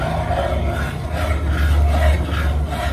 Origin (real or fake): real